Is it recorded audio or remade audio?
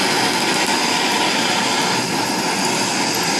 recorded